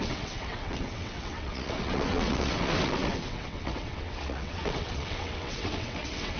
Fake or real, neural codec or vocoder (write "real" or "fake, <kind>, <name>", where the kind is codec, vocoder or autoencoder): fake, vocoder, WaveNeXt